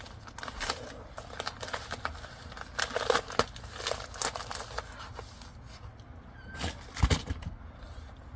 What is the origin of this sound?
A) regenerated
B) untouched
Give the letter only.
B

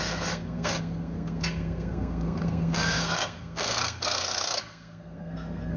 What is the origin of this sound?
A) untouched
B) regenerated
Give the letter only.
B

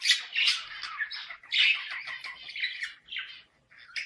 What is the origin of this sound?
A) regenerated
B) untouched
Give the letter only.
B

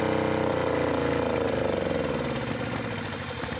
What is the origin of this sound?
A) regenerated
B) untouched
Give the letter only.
B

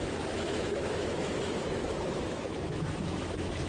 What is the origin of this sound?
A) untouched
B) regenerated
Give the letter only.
B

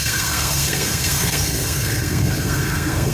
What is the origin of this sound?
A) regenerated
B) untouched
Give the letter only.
A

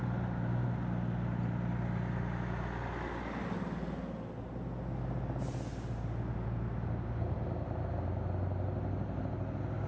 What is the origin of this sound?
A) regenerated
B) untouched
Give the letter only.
B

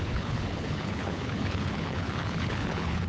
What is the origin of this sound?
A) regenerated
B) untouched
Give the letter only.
A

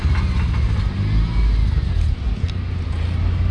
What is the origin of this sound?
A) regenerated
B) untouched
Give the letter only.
B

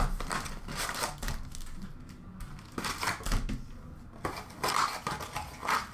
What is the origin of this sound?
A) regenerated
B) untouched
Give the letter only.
B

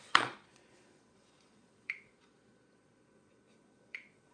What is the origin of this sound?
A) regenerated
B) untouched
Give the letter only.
A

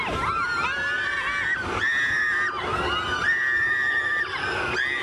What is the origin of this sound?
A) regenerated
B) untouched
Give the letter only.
B